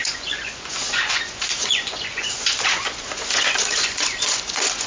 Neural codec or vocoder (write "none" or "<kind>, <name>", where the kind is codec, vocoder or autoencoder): vocoder, Vocos